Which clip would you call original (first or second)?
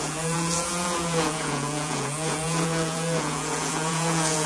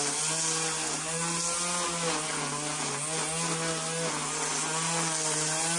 second